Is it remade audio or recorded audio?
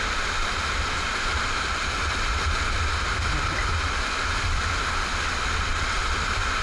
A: remade